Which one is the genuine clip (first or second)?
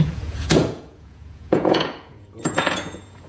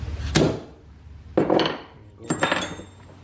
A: second